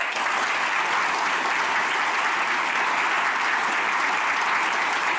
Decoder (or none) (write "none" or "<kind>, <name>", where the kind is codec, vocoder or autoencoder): none